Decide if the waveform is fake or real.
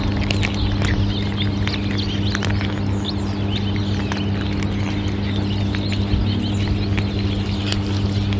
real